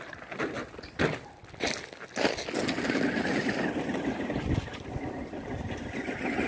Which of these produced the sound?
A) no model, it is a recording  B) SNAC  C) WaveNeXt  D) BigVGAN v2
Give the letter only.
A